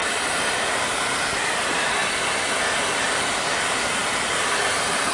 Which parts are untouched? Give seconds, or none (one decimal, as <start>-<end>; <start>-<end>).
1.3-4.0